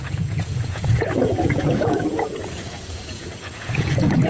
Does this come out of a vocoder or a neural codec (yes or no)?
yes